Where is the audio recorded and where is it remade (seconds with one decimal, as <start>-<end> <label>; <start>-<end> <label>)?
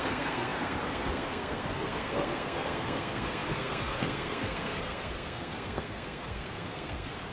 0.0-7.3 remade